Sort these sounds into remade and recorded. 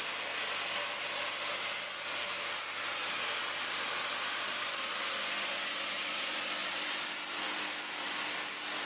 recorded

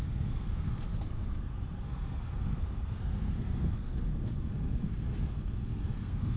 remade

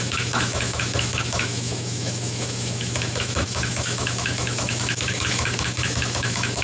remade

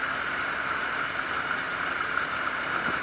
remade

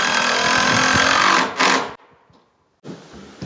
recorded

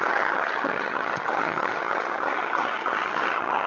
remade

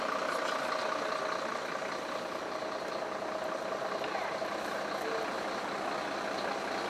recorded